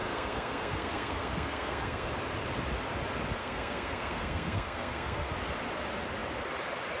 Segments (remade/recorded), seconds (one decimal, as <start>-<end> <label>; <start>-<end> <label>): 0.0-2.1 remade; 2.1-3.4 recorded; 3.4-5.3 remade; 5.3-7.0 recorded

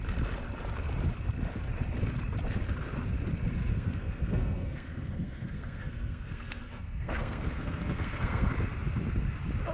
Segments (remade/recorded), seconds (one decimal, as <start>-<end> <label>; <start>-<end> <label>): 0.0-3.7 recorded; 3.7-8.5 remade; 8.5-9.7 recorded

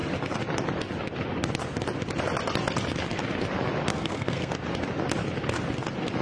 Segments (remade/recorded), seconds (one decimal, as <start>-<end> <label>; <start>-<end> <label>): 0.0-3.9 recorded; 3.9-4.5 remade; 4.5-6.2 recorded

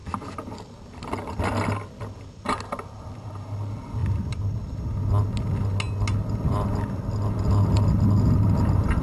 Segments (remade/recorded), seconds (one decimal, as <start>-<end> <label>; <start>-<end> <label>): 0.0-9.0 recorded